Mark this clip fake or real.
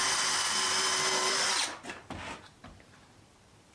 fake